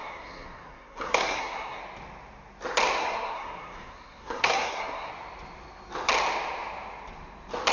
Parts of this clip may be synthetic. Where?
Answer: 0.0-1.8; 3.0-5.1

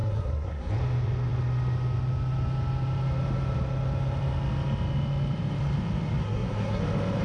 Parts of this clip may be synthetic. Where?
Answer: 0.0-0.7; 6.2-6.8

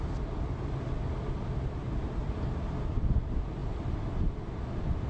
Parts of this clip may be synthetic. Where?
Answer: none

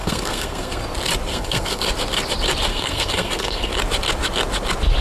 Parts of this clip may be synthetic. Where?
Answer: 0.0-0.8; 1.3-1.9; 2.7-3.7

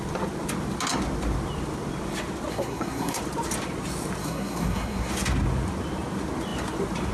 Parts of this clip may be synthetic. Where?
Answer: 2.5-3.2; 4.2-5.1

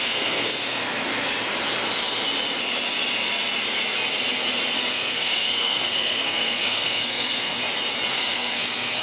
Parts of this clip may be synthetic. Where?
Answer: 0.0-0.8; 4.9-7.6; 8.1-9.0

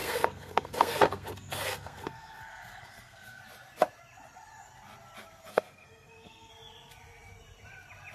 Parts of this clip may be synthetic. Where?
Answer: 0.0-3.4; 5.5-6.5